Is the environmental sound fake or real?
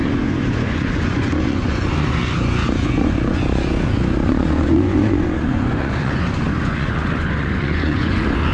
fake